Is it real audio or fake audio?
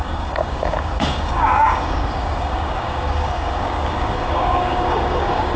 fake